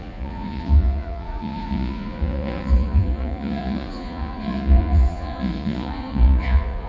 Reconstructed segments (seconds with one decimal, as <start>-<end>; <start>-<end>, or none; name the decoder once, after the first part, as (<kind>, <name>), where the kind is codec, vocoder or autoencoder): 0.0-6.9 (vocoder, Vocos)